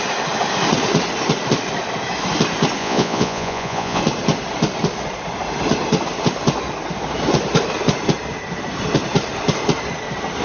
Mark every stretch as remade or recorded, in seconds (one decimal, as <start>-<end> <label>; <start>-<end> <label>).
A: 0.0-2.8 recorded; 2.8-4.0 remade; 4.0-10.4 recorded